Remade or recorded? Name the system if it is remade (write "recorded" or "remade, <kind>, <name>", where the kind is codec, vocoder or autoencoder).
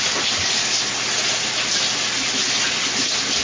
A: recorded